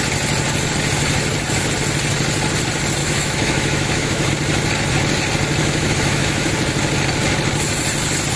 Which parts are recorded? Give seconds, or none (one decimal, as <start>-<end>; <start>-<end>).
0.0-3.0; 4.3-5.6; 6.5-8.4